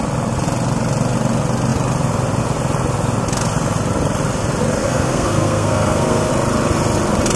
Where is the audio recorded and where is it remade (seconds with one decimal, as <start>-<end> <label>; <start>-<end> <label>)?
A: 0.0-4.8 recorded; 4.8-6.3 remade; 6.3-7.4 recorded